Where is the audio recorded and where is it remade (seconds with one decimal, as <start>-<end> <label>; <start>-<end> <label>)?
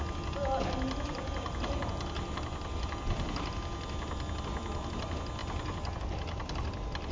0.0-7.1 recorded